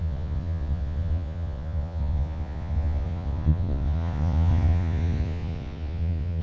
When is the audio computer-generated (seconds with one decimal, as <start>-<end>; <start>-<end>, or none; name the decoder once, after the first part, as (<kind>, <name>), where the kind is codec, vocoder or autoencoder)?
0.0-6.4 (vocoder, Vocos)